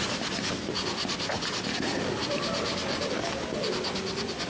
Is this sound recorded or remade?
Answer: recorded